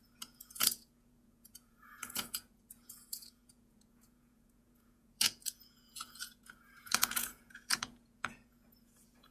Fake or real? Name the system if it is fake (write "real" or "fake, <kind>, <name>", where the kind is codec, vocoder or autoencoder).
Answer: fake, vocoder, Vocos